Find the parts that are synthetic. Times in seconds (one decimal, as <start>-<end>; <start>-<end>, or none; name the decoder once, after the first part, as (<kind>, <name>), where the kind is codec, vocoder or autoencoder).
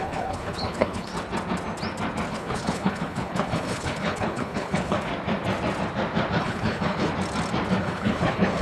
0.0-1.1 (codec, HILCodec); 2.3-5.1; 6.4-7.1; 7.8-8.6